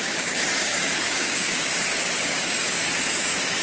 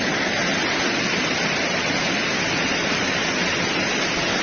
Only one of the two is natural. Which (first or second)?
second